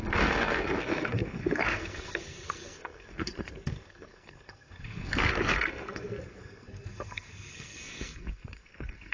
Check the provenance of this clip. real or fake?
fake